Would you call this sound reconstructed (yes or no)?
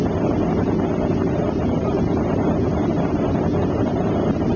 no